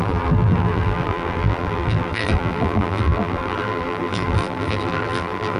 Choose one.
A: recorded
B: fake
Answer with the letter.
B